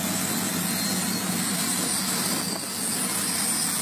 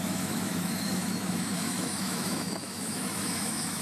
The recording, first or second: first